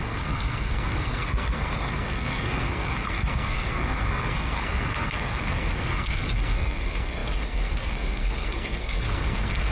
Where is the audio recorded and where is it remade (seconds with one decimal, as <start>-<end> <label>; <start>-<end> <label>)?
0.0-9.7 remade